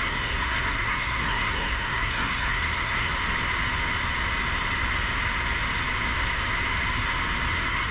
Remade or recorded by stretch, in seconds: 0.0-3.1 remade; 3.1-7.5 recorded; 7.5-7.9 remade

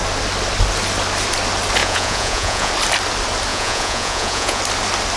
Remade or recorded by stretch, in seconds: 0.0-1.8 recorded; 1.8-2.7 remade; 2.7-3.5 recorded; 3.5-4.6 remade; 4.6-5.2 recorded

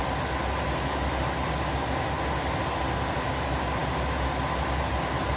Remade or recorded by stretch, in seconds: 0.0-5.4 recorded

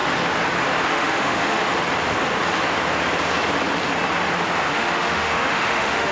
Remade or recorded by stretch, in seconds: 0.0-0.9 recorded; 0.9-1.6 remade; 1.6-4.7 recorded; 4.7-6.1 remade

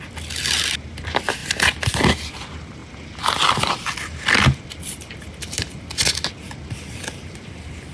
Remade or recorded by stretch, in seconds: 0.0-7.9 recorded

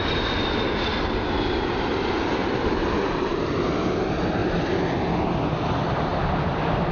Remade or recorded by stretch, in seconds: 0.0-6.9 recorded